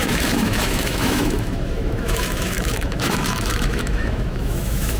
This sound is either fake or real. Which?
fake